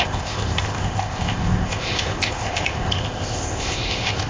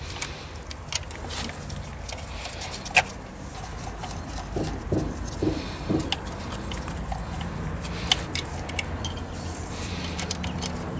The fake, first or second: first